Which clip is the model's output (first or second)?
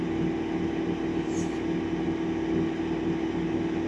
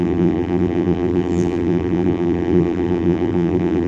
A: second